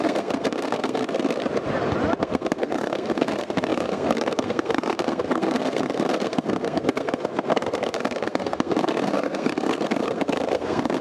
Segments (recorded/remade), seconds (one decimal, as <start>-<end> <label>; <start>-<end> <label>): 0.0-1.4 remade; 1.4-2.2 recorded; 2.2-11.0 remade